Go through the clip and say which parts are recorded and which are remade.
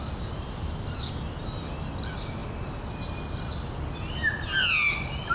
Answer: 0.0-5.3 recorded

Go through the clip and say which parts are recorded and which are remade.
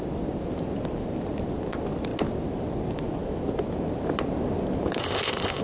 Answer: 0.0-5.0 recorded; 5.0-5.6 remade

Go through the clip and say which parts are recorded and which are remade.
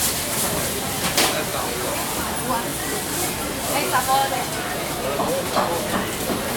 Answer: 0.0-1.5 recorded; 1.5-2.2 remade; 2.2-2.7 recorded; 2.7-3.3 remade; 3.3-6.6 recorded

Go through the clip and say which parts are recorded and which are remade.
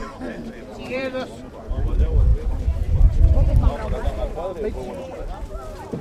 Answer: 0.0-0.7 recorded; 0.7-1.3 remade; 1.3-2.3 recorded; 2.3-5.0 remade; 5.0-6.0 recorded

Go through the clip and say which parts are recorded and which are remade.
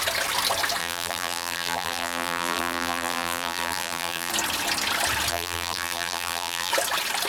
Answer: 0.0-0.8 recorded; 0.8-4.3 remade; 4.3-5.3 recorded; 5.3-6.7 remade; 6.7-7.3 recorded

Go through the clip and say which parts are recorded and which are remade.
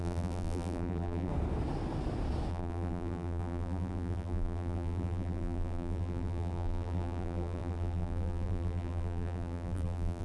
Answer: 0.0-1.3 remade; 1.3-2.5 recorded; 2.5-10.2 remade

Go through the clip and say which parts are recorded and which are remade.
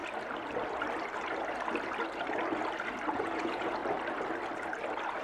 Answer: 0.0-3.1 recorded; 3.1-3.8 remade; 3.8-5.2 recorded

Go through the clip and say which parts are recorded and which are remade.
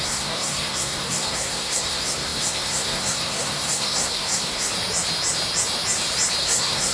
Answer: 0.0-4.7 remade; 4.7-6.4 recorded; 6.4-6.9 remade